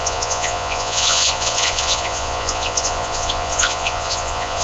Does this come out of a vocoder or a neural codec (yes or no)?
yes